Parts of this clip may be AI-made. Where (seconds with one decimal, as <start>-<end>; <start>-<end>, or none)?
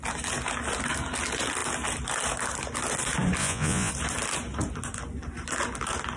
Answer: 3.4-3.9